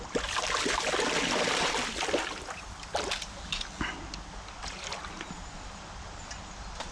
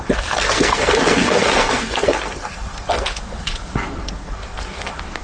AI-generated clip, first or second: second